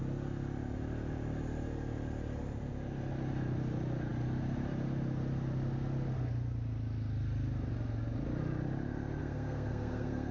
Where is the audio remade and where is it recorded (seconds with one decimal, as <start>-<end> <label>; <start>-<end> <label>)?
0.0-9.2 recorded; 9.2-10.3 remade